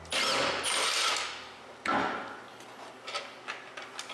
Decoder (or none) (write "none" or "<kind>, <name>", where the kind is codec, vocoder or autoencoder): none